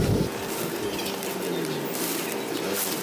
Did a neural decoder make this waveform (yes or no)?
no